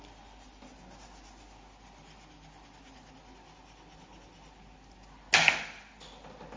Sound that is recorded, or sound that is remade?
recorded